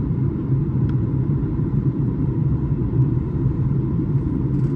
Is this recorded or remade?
remade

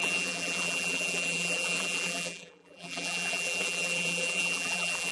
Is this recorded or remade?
remade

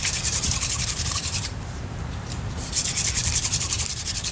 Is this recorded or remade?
remade